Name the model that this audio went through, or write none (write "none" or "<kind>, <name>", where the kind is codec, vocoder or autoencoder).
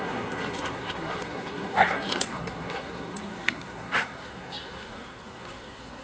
codec, SNAC